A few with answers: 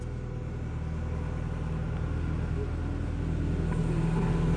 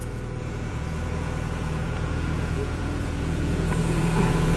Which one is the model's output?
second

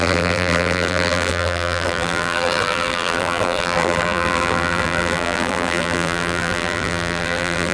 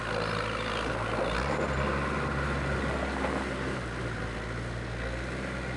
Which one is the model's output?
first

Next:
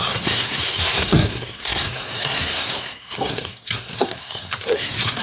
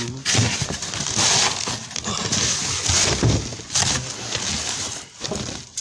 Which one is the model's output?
first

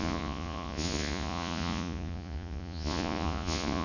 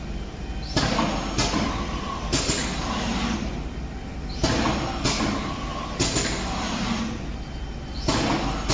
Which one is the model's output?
first